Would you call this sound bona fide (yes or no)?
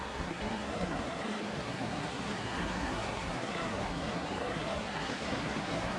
no